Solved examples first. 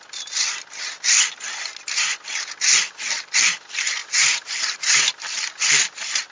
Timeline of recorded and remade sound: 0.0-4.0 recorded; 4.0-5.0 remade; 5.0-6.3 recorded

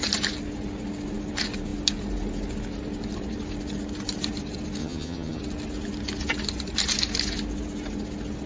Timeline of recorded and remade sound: 0.0-4.8 recorded; 4.8-5.4 remade; 5.4-8.5 recorded